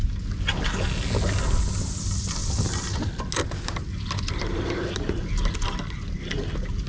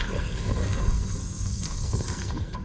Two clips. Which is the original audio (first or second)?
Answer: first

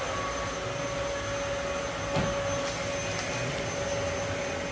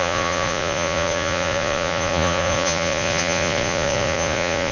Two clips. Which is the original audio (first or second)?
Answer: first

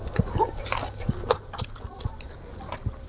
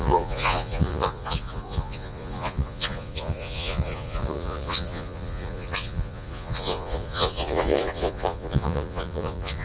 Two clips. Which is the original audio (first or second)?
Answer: first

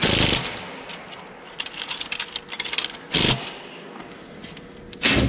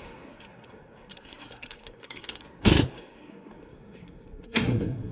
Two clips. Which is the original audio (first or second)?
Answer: first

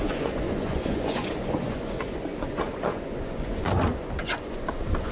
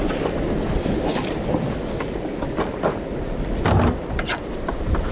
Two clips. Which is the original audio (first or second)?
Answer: second